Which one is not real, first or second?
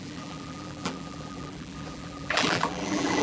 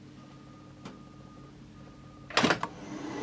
first